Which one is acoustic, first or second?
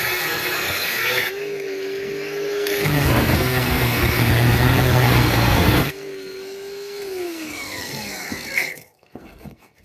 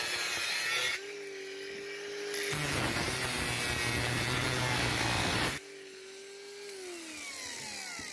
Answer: second